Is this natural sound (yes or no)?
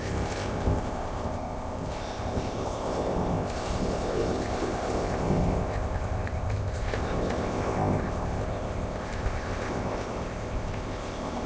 no